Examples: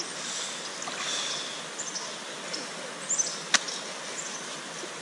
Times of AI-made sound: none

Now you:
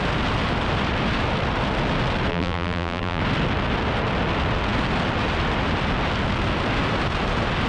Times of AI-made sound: 2.3-3.2 (vocoder, BigVGAN v2)